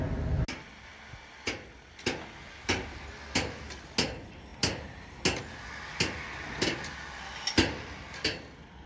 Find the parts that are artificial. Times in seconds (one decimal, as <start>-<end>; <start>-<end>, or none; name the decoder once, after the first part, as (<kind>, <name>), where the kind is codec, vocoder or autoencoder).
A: none